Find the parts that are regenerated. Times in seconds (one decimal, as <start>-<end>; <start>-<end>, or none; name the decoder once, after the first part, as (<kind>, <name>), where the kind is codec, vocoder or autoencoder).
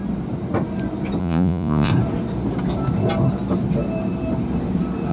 1.2-1.9 (vocoder, Vocos)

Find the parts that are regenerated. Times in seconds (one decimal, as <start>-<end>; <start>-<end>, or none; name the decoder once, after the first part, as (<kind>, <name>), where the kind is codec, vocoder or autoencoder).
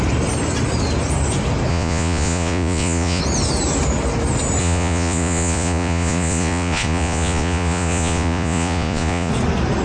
1.7-3.2 (vocoder, Vocos); 4.6-9.3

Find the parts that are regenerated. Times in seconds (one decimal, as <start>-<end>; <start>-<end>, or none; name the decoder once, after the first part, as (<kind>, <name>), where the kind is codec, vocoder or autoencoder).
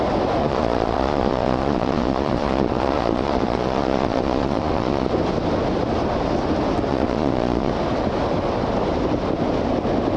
0.4-5.1 (vocoder, Vocos); 6.9-7.7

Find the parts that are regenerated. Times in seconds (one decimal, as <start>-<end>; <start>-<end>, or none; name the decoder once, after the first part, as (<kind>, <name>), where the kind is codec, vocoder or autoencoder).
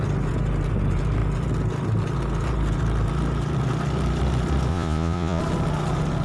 4.7-5.4 (vocoder, Vocos)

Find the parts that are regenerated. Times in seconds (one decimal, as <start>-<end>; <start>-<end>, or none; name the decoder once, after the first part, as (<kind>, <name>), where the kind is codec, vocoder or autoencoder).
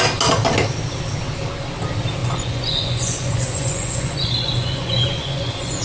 2.2-5.8 (vocoder, Vocos)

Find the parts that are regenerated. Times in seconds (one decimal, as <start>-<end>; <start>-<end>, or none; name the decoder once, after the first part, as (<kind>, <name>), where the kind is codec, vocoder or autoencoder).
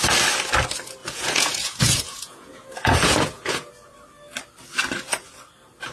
1.0-3.7 (vocoder, Vocos)